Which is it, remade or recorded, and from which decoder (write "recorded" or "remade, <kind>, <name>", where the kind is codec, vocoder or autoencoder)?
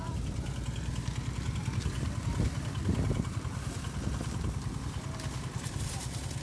recorded